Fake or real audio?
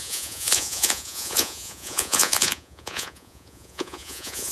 fake